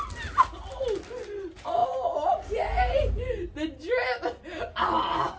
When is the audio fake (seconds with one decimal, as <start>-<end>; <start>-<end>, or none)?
none